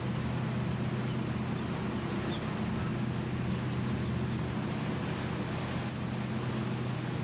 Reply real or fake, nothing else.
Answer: real